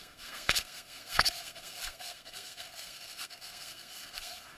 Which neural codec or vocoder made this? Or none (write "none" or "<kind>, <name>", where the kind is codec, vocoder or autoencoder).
codec, SNAC